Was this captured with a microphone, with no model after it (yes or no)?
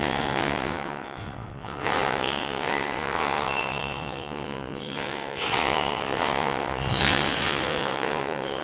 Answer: no